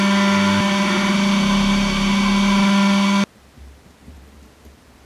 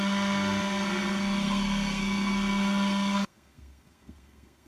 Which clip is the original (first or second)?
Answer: first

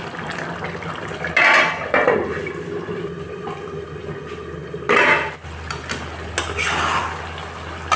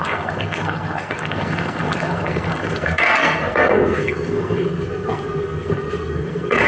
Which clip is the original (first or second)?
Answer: first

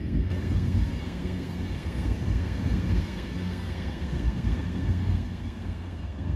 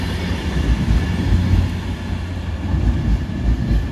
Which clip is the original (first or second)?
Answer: second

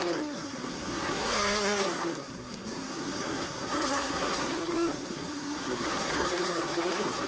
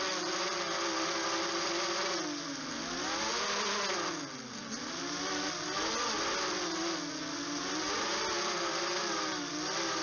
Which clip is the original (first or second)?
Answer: second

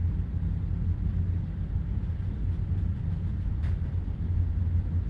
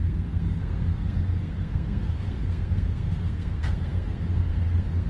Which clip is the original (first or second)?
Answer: first